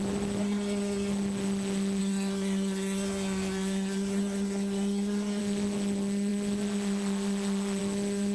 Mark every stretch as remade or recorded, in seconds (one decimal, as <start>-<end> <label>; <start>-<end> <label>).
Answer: 0.0-0.4 recorded; 0.4-1.1 remade; 1.1-2.0 recorded; 2.0-5.4 remade; 5.4-8.3 recorded